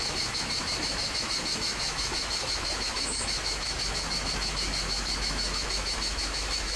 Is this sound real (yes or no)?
no